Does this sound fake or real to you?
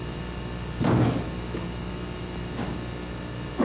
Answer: real